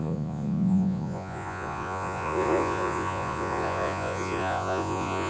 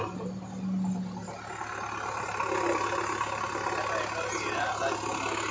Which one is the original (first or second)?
second